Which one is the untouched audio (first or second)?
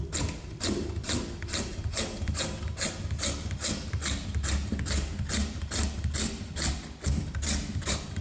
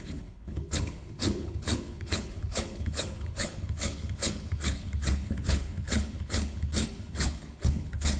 first